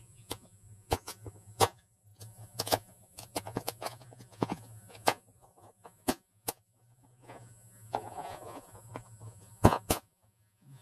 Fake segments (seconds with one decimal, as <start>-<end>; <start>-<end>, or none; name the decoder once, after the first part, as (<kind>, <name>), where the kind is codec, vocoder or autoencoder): 0.0-10.8 (vocoder, Vocos)